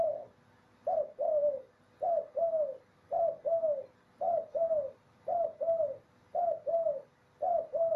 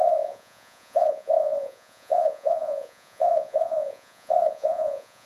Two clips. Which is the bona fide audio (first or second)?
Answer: first